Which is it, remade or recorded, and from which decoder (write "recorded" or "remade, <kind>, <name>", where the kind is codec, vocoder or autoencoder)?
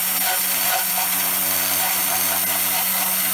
recorded